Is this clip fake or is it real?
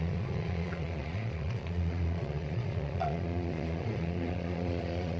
fake